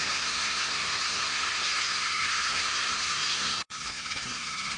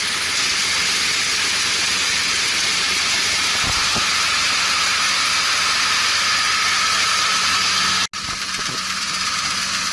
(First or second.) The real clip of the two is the second